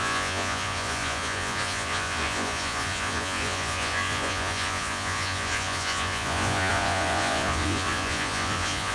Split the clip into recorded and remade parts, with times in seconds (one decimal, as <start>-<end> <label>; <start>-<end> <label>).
0.0-8.9 remade